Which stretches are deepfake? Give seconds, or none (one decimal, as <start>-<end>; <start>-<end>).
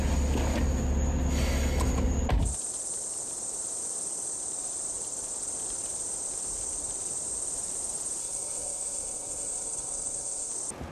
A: 8.2-10.5